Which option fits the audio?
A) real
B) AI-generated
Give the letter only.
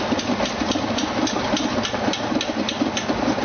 A